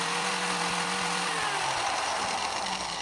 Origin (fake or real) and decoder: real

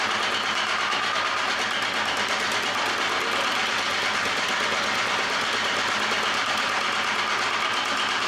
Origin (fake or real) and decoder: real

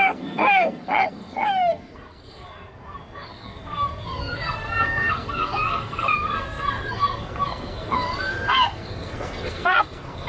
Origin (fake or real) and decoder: fake, codec, SNAC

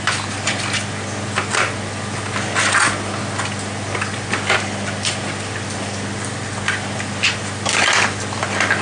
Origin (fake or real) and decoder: real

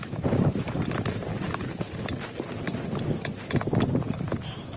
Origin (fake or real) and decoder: real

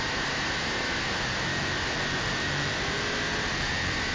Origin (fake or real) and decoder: real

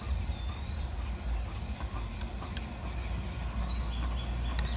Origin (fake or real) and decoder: real